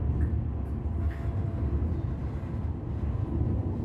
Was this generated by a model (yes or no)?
no